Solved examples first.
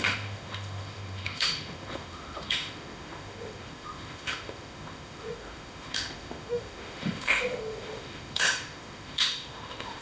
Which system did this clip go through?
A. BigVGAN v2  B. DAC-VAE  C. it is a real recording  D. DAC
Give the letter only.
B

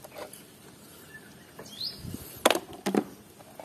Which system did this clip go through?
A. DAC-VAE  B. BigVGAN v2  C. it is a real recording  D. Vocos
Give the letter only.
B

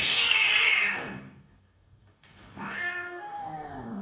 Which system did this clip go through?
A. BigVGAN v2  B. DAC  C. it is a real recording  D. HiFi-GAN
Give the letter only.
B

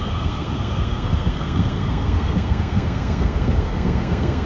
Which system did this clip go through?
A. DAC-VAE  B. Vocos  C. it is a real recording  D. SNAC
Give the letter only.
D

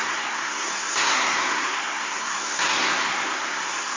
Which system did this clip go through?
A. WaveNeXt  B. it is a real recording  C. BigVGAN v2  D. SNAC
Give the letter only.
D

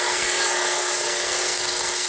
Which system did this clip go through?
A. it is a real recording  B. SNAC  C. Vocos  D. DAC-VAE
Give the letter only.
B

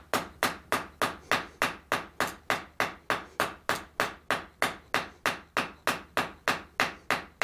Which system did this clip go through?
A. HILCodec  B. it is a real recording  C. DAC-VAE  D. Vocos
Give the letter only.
B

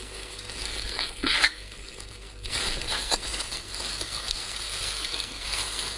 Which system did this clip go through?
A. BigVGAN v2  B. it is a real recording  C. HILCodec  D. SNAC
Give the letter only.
D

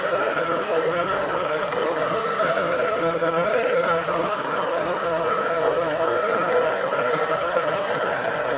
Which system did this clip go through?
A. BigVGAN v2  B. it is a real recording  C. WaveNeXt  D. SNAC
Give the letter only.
D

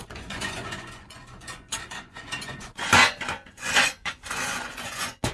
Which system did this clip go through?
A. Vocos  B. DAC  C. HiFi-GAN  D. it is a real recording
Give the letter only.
A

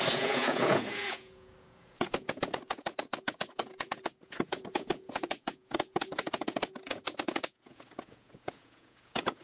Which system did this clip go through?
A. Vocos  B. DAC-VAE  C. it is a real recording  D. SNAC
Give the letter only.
A